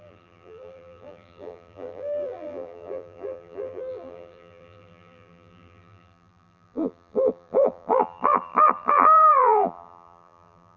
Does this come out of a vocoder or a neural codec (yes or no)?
yes